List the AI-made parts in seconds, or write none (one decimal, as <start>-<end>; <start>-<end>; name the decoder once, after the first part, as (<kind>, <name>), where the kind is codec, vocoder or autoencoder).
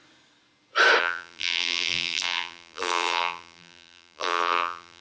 1.0-5.0 (vocoder, BigVGAN v2)